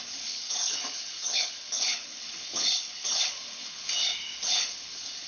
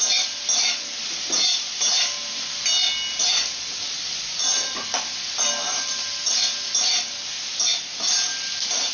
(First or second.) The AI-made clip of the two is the first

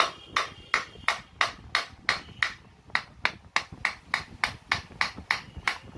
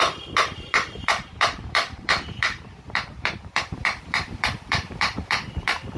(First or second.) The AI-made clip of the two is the second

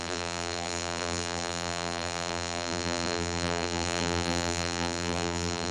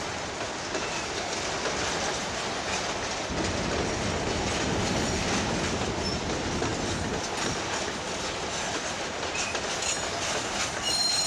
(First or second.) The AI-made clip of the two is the first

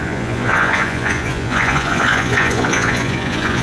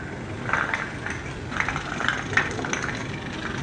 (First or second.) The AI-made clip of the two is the first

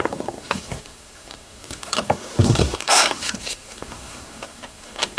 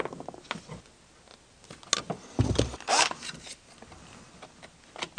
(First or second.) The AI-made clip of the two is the first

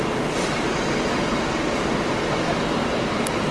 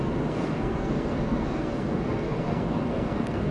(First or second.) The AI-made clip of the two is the second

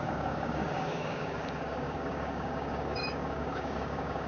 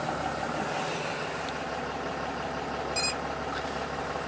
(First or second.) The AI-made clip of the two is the first